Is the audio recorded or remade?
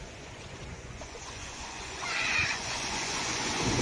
remade